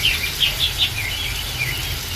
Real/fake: real